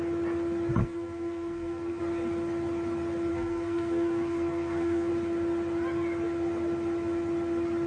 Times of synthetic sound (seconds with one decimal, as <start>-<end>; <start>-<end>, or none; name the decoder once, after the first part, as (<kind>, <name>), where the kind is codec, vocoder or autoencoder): 0.8-2.0 (codec, SNAC); 3.3-5.1